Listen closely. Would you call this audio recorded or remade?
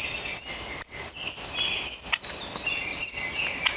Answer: recorded